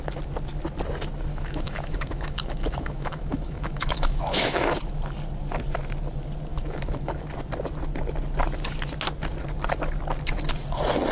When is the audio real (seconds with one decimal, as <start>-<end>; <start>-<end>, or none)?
0.0-1.3; 4.8-6.5; 7.1-11.1